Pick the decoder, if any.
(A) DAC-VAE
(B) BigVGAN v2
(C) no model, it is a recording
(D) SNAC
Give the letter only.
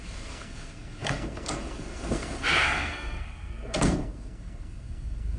D